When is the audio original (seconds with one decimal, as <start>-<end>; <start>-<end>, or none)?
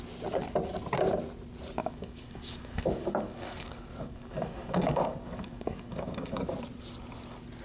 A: 0.0-1.8; 6.4-7.6